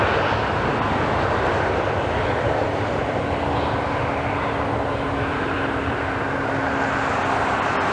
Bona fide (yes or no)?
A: yes